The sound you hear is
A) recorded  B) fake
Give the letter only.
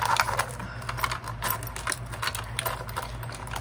A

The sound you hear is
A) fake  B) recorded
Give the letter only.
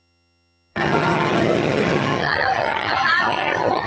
A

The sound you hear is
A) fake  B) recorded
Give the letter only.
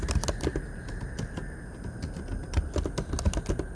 B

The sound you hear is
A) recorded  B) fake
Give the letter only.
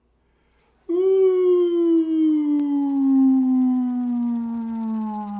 A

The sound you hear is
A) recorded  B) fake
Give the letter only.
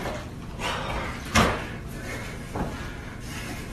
A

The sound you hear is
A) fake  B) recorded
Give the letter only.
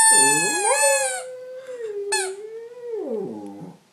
B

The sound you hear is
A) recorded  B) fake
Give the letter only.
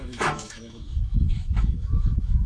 B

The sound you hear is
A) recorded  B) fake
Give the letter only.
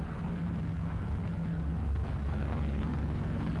B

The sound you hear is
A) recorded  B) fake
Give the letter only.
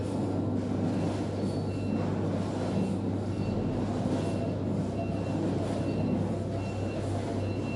A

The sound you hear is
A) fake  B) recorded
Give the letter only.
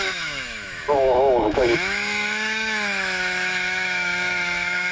A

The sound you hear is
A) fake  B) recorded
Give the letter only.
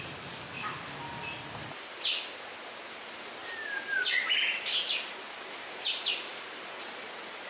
B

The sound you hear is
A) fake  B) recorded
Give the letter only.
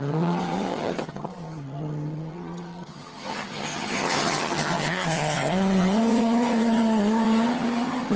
A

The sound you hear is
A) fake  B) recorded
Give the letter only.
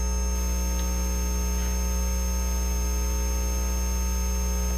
B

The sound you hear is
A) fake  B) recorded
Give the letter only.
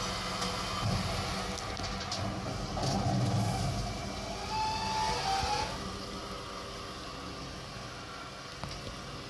B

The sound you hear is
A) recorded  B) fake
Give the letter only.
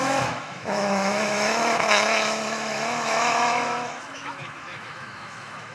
B